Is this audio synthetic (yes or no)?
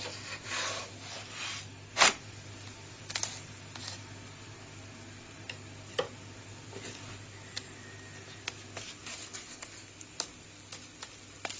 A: no